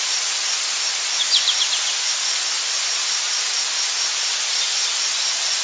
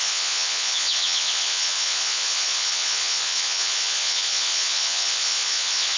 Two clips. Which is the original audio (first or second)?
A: first